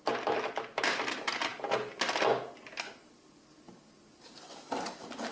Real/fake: real